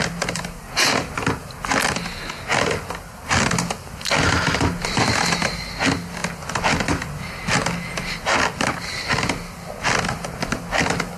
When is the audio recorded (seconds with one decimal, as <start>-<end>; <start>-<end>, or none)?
0.0-11.2